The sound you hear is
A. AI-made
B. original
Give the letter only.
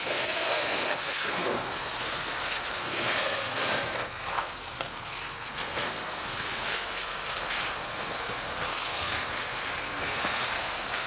A